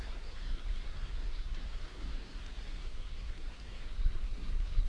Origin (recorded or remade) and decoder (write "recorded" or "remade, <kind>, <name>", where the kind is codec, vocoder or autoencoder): remade, codec, SNAC